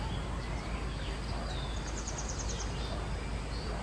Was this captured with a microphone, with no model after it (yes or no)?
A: yes